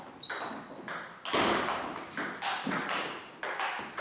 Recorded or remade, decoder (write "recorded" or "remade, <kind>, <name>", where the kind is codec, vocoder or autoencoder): recorded